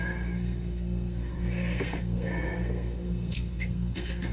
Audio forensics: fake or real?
fake